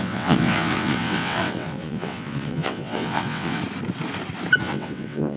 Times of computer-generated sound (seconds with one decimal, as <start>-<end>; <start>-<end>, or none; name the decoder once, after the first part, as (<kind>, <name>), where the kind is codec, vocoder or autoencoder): 0.0-3.6 (vocoder, WaveNeXt); 4.6-5.4